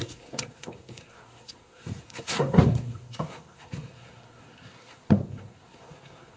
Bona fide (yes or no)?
no